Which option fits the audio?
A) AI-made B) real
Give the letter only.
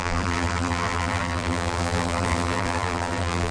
A